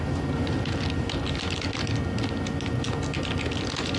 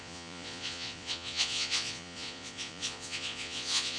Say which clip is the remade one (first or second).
second